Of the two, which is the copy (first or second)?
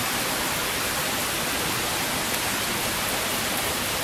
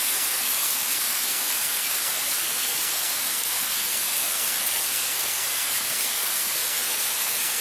second